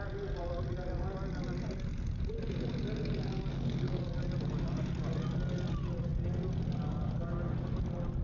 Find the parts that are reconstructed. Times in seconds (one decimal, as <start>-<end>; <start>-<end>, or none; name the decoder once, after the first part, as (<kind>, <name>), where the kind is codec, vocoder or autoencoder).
3.5-4.0 (codec, SNAC)